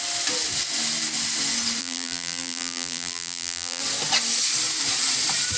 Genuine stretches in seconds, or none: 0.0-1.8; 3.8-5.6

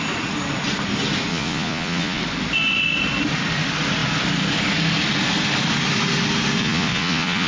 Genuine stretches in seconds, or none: 0.0-1.3; 2.2-6.6

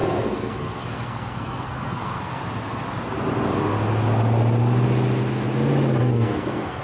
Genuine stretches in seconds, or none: 2.4-6.0

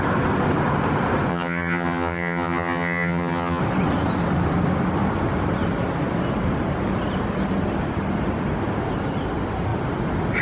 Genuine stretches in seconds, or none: 0.0-1.3; 3.6-10.4

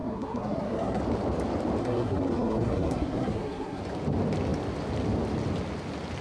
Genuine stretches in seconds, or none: 1.0-1.8; 3.8-6.2